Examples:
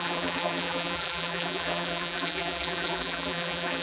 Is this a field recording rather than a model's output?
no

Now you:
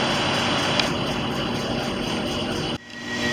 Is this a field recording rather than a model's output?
yes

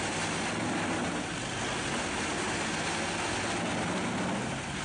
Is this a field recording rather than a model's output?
yes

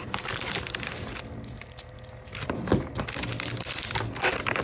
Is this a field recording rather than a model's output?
yes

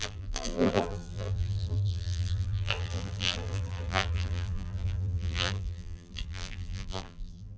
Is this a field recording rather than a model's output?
no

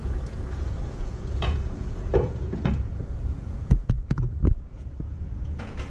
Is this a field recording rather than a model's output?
no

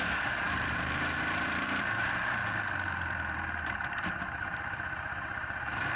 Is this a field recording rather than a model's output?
no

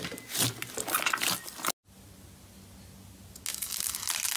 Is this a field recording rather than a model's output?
yes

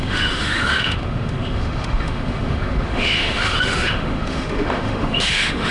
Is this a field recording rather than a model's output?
no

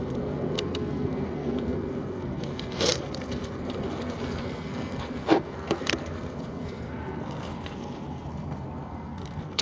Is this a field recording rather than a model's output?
no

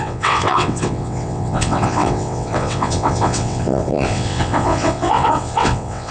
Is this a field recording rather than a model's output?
no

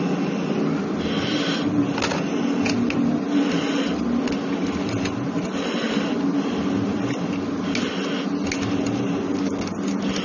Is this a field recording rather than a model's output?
yes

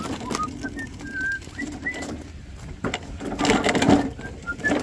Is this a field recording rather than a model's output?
no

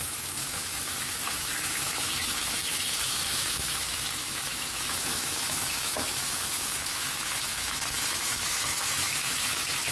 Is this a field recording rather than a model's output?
no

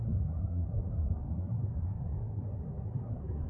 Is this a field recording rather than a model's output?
no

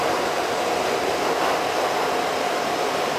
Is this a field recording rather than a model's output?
yes